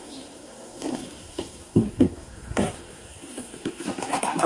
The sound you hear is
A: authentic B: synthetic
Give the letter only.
B